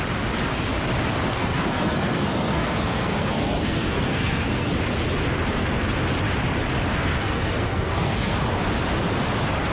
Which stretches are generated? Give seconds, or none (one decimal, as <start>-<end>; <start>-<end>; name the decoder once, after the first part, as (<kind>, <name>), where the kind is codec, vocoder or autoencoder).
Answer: 1.3-4.7 (codec, SNAC); 6.9-8.4

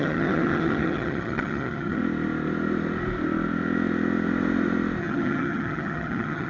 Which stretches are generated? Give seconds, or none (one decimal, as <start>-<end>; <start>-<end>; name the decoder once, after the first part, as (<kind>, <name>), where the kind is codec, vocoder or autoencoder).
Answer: 0.0-2.0 (vocoder, HiFi-GAN); 5.0-6.5

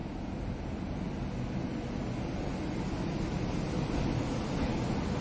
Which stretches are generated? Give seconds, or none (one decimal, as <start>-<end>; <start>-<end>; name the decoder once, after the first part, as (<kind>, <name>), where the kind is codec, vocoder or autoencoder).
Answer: none

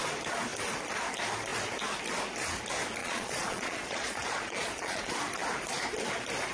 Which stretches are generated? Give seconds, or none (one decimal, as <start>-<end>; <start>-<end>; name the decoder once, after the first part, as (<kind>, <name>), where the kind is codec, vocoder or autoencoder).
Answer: 3.0-5.0 (vocoder, Vocos)

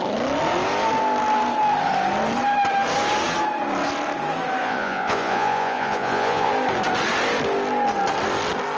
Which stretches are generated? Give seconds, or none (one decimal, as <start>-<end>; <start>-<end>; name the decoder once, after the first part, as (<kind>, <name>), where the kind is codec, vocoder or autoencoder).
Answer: 4.6-6.5 (vocoder, Vocos)

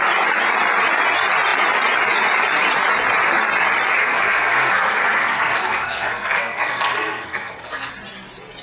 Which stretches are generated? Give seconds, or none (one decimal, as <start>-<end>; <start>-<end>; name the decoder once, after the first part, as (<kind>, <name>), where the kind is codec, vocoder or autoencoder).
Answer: 4.0-7.9 (codec, SNAC)